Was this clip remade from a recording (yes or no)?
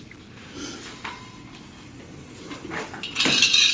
no